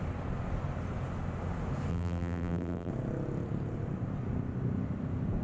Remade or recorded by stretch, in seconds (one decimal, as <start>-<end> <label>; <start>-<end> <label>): 0.0-1.9 recorded; 1.9-2.9 remade; 2.9-5.4 recorded